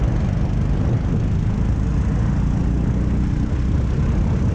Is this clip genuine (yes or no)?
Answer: yes